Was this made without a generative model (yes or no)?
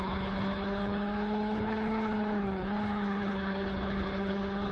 no